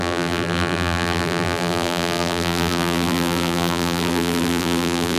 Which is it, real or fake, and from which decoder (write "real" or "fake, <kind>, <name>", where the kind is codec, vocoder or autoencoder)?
fake, vocoder, BigVGAN v2